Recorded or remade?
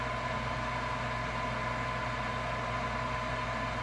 recorded